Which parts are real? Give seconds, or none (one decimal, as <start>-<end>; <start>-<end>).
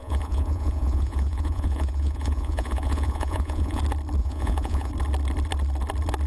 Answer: 3.8-4.2; 4.9-6.3